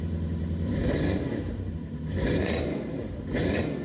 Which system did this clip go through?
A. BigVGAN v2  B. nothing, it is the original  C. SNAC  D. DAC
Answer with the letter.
A